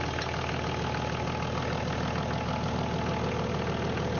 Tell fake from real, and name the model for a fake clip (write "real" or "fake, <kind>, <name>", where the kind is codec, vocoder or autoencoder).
real